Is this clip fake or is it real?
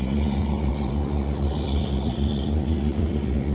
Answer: fake